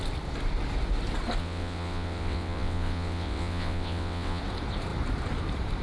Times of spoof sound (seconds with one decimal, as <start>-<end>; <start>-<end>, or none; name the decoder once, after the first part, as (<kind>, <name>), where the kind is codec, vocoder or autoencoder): 1.4-4.4 (vocoder, WaveNeXt)